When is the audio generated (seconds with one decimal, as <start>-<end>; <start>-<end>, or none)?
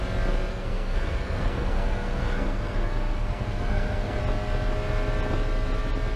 0.5-4.2